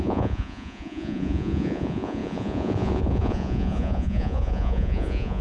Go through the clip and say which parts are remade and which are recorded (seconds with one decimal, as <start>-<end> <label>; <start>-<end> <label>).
0.0-5.4 remade